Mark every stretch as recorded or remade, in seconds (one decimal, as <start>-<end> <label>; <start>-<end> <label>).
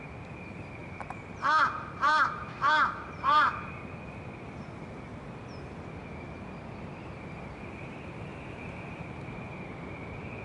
0.0-0.8 recorded; 0.8-3.5 remade; 3.5-8.3 recorded; 8.3-9.0 remade; 9.0-10.4 recorded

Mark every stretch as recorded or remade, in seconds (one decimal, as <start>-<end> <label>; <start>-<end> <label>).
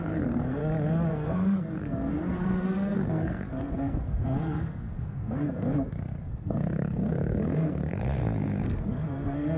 0.0-0.6 remade; 0.6-1.1 recorded; 1.1-9.6 remade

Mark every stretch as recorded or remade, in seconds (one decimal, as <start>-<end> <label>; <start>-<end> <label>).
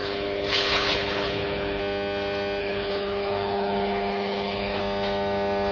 0.0-1.8 remade; 1.8-2.6 recorded; 2.6-4.8 remade; 4.8-5.7 recorded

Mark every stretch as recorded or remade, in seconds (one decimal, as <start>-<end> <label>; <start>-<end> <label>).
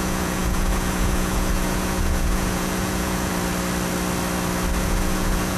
0.0-3.3 remade; 3.3-4.8 recorded; 4.8-5.6 remade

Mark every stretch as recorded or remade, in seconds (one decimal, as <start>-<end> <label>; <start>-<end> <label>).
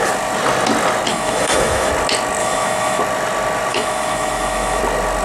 0.0-1.1 recorded; 1.1-1.9 remade; 1.9-2.4 recorded; 2.4-3.0 remade; 3.0-3.7 recorded; 3.7-4.8 remade; 4.8-5.2 recorded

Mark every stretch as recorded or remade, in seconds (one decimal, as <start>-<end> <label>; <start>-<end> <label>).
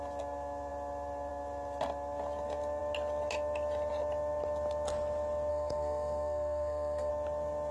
0.0-5.5 recorded; 5.5-7.1 remade; 7.1-7.7 recorded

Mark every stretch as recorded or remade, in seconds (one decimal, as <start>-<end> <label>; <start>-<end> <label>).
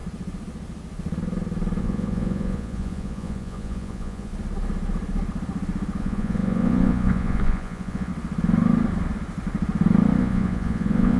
0.0-1.8 recorded; 1.8-4.3 remade; 4.3-6.0 recorded; 6.0-8.1 remade; 8.1-10.2 recorded; 10.2-11.2 remade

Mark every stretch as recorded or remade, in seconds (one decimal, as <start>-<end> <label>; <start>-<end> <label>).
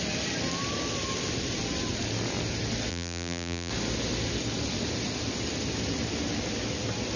0.0-2.9 recorded; 2.9-3.7 remade; 3.7-7.2 recorded